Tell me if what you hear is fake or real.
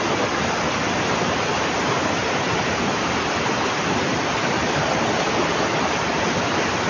fake